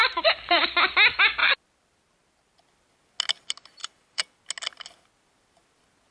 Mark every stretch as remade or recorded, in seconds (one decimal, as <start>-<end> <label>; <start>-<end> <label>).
0.0-0.6 remade; 0.6-3.8 recorded; 3.8-4.4 remade; 4.4-6.1 recorded